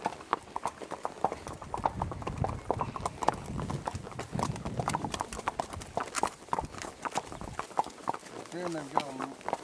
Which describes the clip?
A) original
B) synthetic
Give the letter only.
A